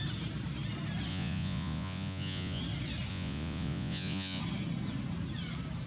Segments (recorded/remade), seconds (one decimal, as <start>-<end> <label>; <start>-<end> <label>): 0.0-1.1 recorded; 1.1-2.6 remade; 2.6-3.1 recorded; 3.1-4.4 remade; 4.4-5.9 recorded